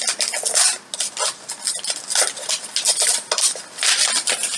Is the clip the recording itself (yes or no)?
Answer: yes